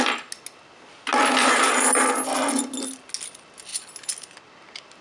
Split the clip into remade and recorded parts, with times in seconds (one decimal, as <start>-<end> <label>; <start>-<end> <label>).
0.0-5.0 recorded